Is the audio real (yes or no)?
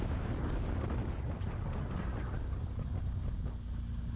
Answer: yes